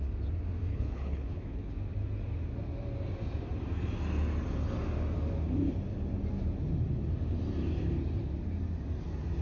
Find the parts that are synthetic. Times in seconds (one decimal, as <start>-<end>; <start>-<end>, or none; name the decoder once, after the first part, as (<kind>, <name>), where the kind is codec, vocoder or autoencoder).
0.7-1.7 (codec, HILCodec)

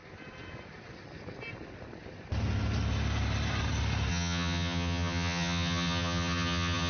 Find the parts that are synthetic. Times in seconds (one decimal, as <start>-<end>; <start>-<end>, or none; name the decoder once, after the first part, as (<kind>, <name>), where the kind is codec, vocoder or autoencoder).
4.1-6.9 (vocoder, HiFi-GAN)

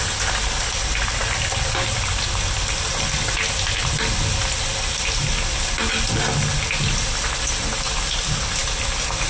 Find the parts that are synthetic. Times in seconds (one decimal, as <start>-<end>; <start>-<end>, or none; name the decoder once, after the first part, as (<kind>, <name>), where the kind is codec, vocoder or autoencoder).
none